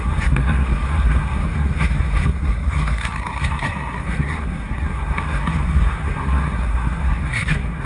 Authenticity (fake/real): fake